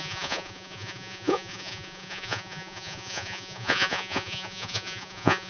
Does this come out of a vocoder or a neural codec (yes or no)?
yes